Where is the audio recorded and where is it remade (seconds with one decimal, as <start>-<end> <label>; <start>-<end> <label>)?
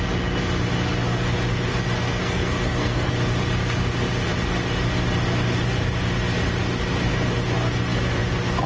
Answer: 0.0-2.0 recorded; 2.0-3.1 remade; 3.1-8.7 recorded